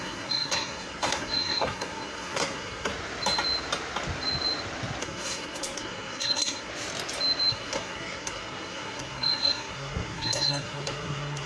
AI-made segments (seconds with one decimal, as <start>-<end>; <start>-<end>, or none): 0.0-2.9; 5.0-6.7; 7.5-11.5